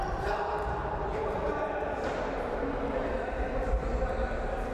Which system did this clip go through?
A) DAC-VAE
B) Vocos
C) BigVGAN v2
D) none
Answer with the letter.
D